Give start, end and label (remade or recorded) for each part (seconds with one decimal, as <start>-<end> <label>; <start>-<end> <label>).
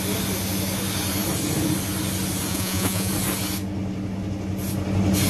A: 0.0-2.5 recorded; 2.5-3.1 remade; 3.1-5.3 recorded